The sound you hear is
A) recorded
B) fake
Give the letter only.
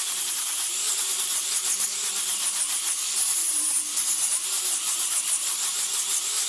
B